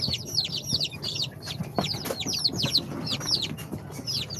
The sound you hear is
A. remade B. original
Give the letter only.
B